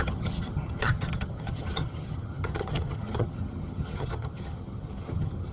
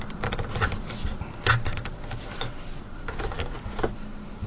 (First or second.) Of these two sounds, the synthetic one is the first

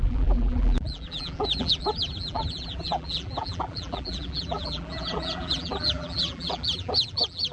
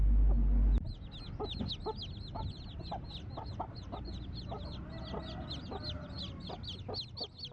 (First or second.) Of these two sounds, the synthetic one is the first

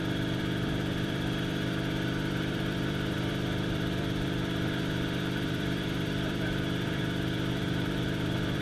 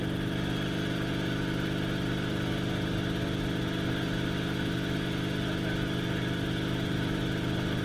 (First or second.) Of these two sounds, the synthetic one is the first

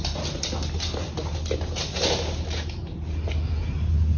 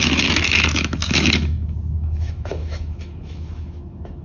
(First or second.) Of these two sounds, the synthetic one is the second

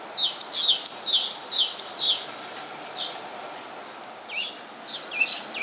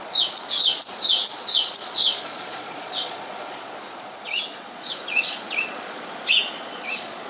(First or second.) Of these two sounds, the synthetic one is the second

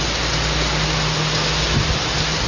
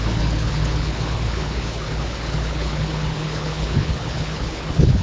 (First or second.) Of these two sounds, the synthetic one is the second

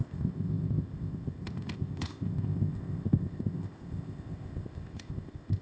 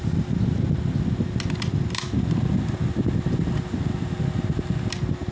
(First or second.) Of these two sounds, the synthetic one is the first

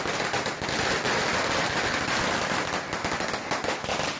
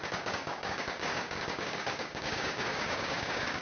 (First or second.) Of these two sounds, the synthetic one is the second